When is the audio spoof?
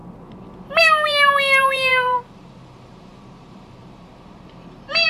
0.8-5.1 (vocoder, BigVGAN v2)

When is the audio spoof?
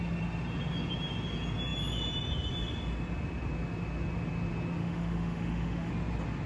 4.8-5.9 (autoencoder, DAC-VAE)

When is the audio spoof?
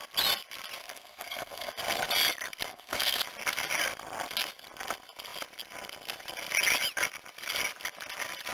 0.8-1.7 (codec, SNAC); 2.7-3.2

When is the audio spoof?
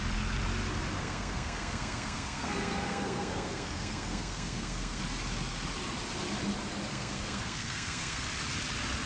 1.0-5.0 (codec, SNAC); 6.9-8.3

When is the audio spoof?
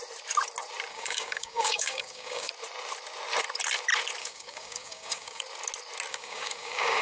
0.9-2.5 (codec, DAC); 4.2-5.4; 6.1-7.0